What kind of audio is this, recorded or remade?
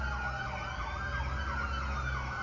recorded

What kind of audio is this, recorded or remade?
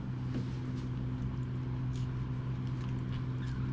recorded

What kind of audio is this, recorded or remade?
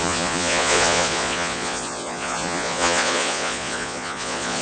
remade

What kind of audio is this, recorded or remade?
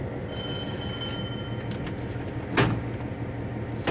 recorded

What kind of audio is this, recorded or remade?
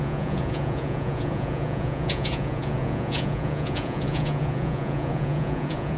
remade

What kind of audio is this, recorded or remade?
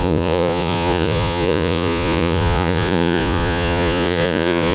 remade